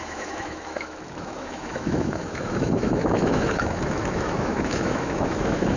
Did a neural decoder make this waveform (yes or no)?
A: yes